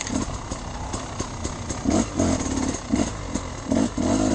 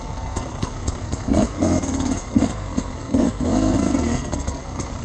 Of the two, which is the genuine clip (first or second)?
first